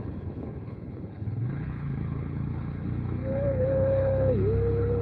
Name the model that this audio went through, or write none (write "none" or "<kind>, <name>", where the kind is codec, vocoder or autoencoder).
codec, HILCodec